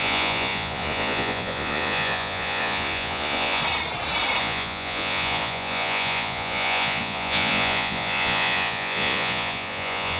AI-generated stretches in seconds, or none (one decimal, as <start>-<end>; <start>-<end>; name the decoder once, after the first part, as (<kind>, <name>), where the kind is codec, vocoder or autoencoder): 0.0-3.6 (vocoder, Vocos); 4.4-10.2